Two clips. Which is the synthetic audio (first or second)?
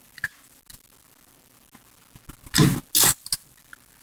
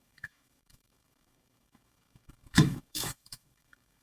second